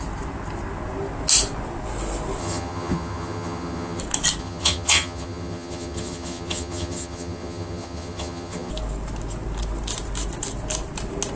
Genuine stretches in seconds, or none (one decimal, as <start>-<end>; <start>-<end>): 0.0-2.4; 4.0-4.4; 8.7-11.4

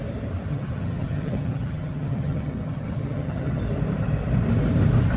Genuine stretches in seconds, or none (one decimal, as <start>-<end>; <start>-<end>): 0.0-0.5; 3.6-5.2

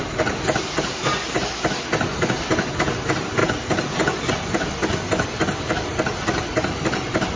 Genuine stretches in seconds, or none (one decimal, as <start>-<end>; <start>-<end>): 0.0-7.4

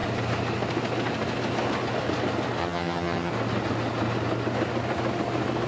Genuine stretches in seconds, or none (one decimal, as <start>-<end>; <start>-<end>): 0.0-2.6; 3.3-5.7

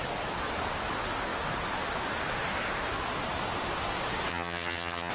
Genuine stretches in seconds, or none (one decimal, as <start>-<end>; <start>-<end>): 0.0-4.3